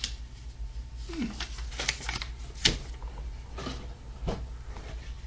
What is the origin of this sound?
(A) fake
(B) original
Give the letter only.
B